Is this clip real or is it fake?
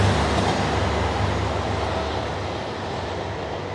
real